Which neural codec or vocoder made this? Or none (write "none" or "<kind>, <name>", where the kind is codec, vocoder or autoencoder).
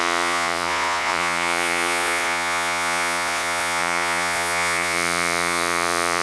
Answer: vocoder, Vocos